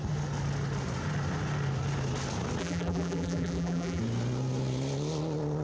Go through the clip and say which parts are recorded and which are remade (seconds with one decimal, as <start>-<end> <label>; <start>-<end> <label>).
0.0-2.6 recorded; 2.6-4.0 remade; 4.0-5.6 recorded

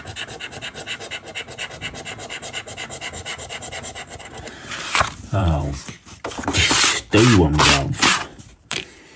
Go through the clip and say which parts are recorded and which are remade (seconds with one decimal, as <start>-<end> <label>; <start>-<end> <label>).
0.0-3.3 recorded; 3.3-5.6 remade; 5.6-8.3 recorded; 8.3-9.2 remade

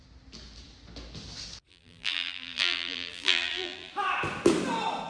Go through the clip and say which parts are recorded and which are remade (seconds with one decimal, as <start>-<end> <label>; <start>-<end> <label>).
0.0-1.7 recorded; 1.7-3.9 remade; 3.9-5.1 recorded

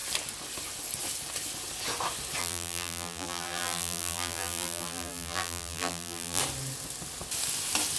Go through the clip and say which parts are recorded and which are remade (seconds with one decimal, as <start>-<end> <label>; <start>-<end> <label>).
0.0-2.4 recorded; 2.4-6.4 remade; 6.4-8.0 recorded

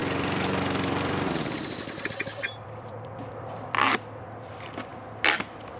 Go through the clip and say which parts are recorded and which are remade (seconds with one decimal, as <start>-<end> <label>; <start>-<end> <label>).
0.0-4.9 remade; 4.9-5.8 recorded

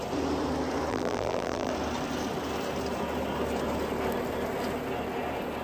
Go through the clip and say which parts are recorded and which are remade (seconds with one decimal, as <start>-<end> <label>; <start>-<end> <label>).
0.0-0.9 recorded; 0.9-1.7 remade; 1.7-5.6 recorded

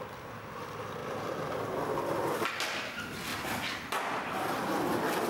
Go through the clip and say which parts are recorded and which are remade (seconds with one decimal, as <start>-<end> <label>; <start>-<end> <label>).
0.0-1.0 recorded; 1.0-1.5 remade; 1.5-3.3 recorded; 3.3-4.7 remade; 4.7-5.3 recorded